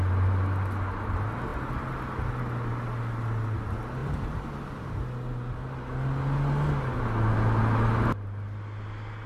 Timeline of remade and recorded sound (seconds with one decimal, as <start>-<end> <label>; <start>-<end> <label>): 0.0-4.0 recorded; 4.0-4.9 remade; 4.9-9.3 recorded